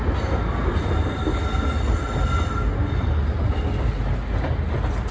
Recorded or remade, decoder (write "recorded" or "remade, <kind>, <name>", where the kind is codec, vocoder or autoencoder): recorded